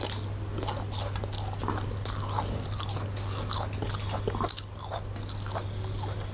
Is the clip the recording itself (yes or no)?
yes